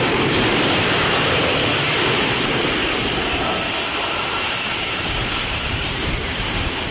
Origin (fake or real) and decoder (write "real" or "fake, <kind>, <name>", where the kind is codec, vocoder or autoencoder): fake, vocoder, BigVGAN v2